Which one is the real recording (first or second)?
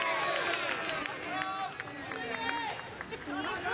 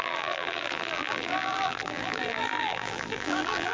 first